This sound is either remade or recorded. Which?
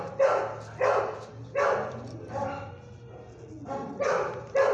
recorded